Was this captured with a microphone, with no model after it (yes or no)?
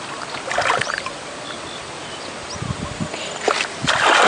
yes